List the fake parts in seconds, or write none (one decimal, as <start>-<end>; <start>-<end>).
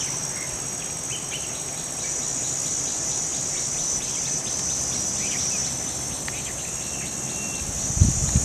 none